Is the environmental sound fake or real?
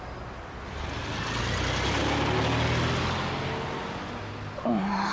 real